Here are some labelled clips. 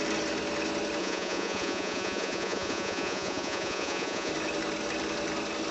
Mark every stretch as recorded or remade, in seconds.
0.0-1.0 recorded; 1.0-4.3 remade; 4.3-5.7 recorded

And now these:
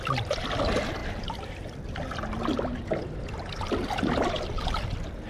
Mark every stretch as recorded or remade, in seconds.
0.0-5.3 recorded

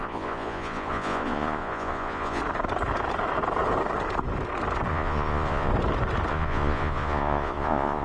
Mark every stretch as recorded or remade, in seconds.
0.0-2.4 remade; 2.4-4.9 recorded; 4.9-5.7 remade; 5.7-6.3 recorded; 6.3-8.0 remade